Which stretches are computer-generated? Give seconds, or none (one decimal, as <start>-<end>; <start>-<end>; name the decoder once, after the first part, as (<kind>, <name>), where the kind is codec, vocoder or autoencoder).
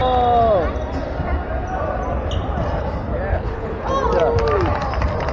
3.3-3.9 (codec, HILCodec)